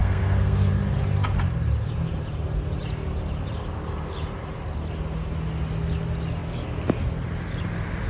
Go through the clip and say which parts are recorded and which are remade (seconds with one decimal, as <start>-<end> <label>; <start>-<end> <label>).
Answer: 0.0-0.7 remade; 0.7-8.1 recorded

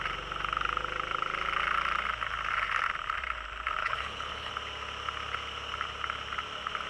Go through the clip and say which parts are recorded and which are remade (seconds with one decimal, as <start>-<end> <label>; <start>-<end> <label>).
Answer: 0.0-3.8 recorded; 3.8-4.5 remade; 4.5-6.9 recorded

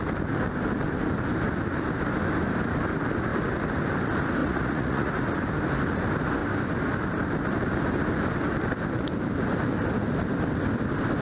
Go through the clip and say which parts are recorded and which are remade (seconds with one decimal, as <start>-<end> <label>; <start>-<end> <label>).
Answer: 0.0-4.4 recorded; 4.4-5.1 remade; 5.1-11.2 recorded

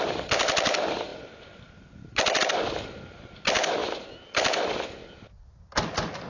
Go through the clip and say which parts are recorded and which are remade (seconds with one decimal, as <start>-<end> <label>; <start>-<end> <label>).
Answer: 0.0-6.3 recorded